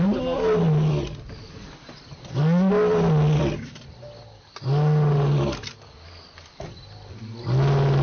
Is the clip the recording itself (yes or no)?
yes